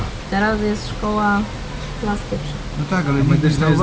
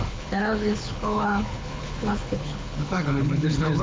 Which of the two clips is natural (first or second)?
first